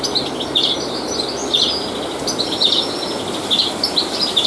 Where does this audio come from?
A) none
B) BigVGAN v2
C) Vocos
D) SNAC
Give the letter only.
A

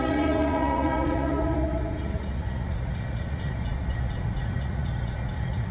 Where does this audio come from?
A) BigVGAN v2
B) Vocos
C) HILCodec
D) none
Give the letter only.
B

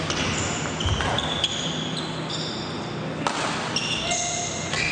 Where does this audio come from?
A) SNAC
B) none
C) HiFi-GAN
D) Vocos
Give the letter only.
B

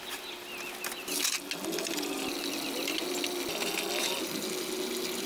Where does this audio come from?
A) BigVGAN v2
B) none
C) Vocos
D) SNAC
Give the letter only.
B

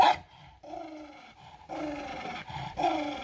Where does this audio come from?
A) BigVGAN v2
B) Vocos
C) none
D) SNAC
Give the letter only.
C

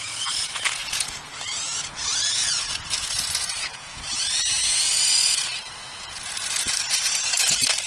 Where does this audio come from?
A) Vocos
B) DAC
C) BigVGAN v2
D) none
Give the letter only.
A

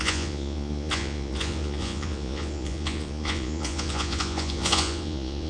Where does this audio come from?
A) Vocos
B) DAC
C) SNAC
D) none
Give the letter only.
A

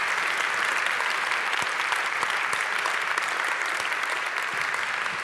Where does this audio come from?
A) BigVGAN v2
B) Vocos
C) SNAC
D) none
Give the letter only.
D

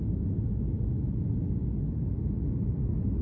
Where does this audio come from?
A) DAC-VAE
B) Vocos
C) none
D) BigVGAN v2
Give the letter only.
C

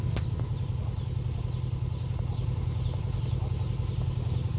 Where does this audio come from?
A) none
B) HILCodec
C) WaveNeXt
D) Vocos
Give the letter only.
A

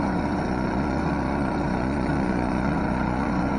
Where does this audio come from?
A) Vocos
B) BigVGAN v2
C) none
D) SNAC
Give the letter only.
A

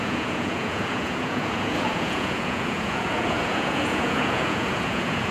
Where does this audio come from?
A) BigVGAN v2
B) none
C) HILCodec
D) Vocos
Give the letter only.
D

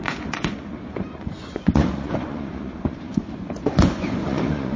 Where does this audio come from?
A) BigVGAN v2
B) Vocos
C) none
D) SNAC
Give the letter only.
B